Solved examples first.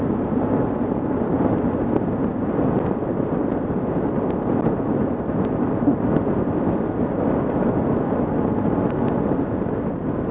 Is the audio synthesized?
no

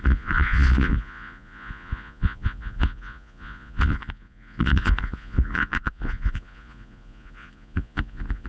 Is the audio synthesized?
yes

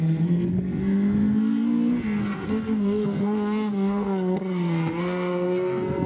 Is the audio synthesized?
yes